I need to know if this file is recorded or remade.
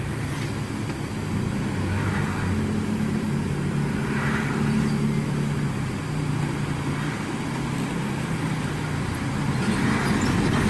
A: recorded